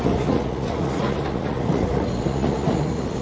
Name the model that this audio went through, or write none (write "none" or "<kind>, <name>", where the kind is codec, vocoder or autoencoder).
vocoder, Vocos